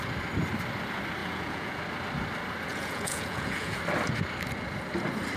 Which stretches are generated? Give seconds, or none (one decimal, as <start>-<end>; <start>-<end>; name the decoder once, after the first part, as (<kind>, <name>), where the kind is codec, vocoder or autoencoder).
1.2-1.8 (vocoder, Vocos); 2.7-3.8